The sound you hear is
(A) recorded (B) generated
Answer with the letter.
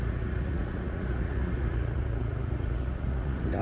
B